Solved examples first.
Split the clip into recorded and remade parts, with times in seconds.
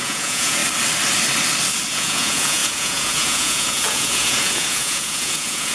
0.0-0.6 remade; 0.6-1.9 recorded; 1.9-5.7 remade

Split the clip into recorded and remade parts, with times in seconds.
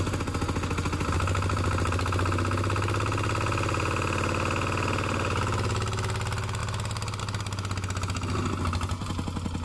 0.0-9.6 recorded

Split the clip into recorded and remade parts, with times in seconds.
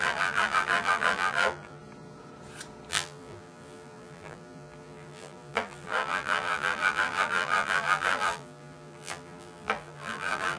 0.0-1.8 remade; 1.8-2.9 recorded; 2.9-10.6 remade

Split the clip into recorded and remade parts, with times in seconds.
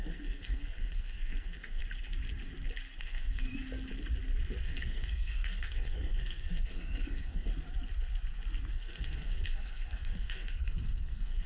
0.0-1.8 remade; 1.8-3.0 recorded; 3.0-3.5 remade; 3.5-4.6 recorded; 4.6-7.5 remade; 7.5-8.7 recorded; 8.7-11.5 remade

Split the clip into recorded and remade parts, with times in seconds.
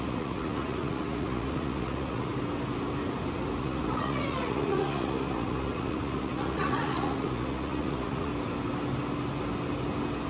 0.0-2.3 remade; 2.3-3.6 recorded; 3.6-8.3 remade; 8.3-10.3 recorded